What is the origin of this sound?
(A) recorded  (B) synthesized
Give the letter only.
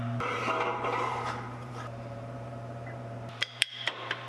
B